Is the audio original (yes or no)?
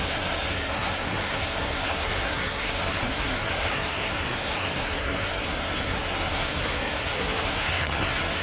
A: no